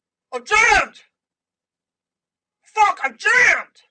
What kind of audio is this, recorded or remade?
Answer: remade